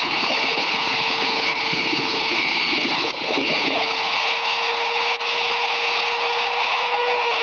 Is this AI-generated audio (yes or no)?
yes